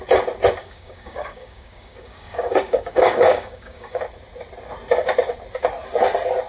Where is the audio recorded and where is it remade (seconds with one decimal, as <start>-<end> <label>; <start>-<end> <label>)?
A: 0.0-0.6 recorded; 0.6-4.0 remade; 4.0-6.5 recorded